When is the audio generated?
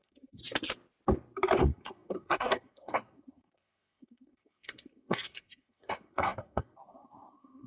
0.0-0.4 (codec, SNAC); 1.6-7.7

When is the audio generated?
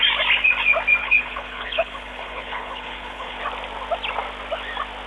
1.0-3.4 (codec, HILCodec)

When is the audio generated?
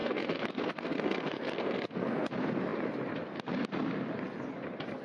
0.0-2.3 (codec, SNAC)